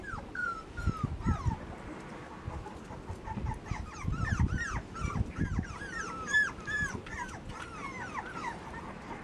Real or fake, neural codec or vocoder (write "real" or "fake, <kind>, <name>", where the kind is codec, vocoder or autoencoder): real